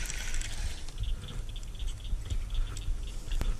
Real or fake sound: real